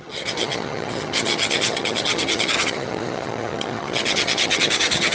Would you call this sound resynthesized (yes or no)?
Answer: yes